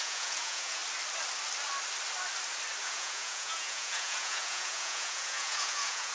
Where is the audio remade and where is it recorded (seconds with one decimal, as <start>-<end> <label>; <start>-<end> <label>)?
0.0-0.8 remade; 0.8-2.8 recorded; 2.8-6.1 remade